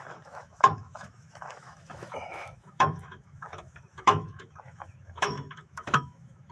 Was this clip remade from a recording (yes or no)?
yes